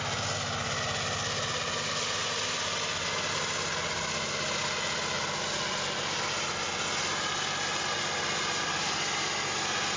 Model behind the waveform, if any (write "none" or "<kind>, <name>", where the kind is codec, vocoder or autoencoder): none